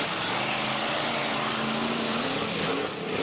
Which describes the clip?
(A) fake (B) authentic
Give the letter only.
B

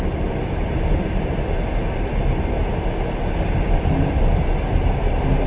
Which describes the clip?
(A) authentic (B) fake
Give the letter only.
A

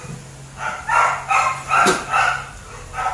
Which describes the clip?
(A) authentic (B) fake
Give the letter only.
A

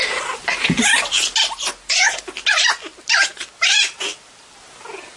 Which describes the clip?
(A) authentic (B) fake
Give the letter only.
A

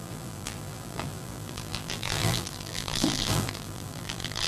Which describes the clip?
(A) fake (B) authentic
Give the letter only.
A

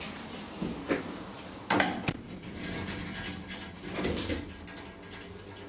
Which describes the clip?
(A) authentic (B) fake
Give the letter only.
A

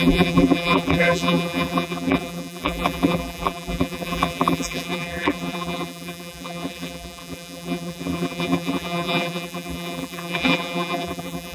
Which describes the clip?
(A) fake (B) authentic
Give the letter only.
A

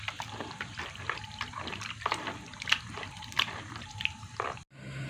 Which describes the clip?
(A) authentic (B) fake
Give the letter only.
A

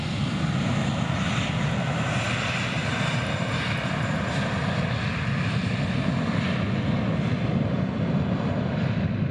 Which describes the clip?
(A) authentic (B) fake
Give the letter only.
A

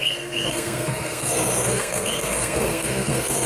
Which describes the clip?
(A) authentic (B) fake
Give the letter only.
B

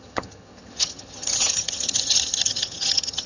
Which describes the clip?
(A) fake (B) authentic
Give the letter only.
A